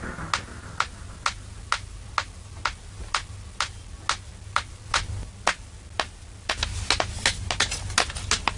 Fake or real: real